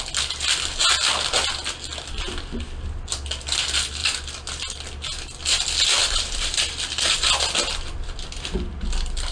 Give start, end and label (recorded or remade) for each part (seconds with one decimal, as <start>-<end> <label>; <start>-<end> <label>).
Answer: 0.0-4.0 recorded; 4.0-4.5 remade; 4.5-6.0 recorded; 6.0-7.3 remade; 7.3-9.3 recorded